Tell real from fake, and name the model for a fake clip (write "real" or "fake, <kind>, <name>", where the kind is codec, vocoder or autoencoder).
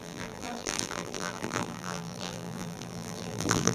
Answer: fake, vocoder, BigVGAN v2